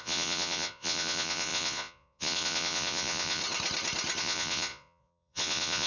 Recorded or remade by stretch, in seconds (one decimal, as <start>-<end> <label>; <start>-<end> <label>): 0.0-3.4 remade; 3.4-4.2 recorded; 4.2-5.9 remade